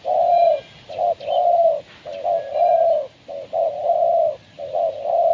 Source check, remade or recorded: recorded